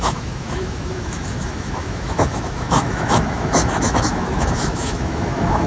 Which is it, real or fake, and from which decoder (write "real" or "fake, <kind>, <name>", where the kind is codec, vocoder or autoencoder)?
fake, autoencoder, DAC-VAE